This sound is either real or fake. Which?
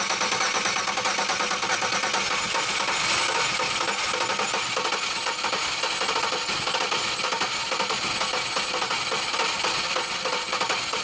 real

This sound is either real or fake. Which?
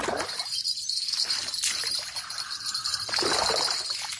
real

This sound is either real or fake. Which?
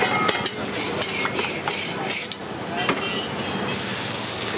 real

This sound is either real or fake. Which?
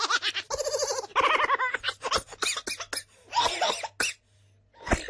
real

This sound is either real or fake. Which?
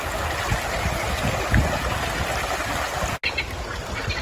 real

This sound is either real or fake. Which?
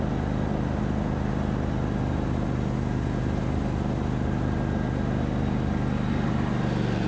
real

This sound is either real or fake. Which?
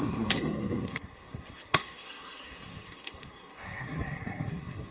fake